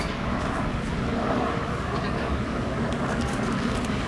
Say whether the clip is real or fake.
fake